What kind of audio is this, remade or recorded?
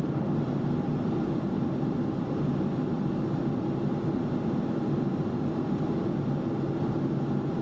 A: recorded